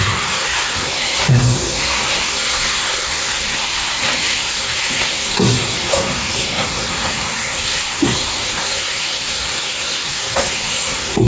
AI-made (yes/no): yes